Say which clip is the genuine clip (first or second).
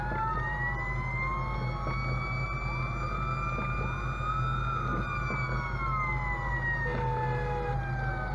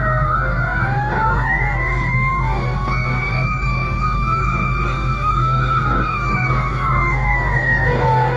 first